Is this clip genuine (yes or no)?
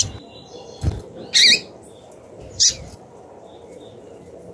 yes